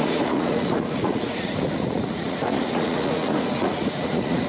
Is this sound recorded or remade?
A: remade